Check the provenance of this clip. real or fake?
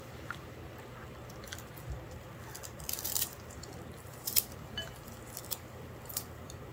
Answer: fake